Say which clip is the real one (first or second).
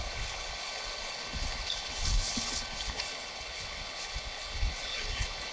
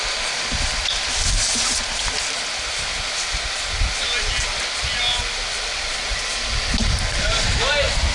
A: second